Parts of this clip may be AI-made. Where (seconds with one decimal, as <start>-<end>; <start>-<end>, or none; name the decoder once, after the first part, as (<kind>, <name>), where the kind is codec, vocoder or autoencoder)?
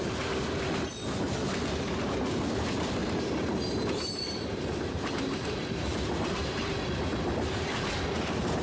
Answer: 3.0-6.9 (vocoder, BigVGAN v2)